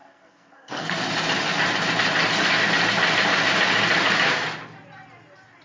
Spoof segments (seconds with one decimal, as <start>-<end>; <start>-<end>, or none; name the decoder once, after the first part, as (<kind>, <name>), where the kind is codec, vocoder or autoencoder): 0.0-0.9 (codec, SNAC)

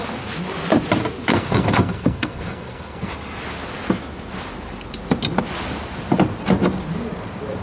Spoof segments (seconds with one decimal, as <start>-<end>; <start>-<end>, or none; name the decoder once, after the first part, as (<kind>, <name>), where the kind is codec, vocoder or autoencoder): 1.3-3.1 (codec, SNAC)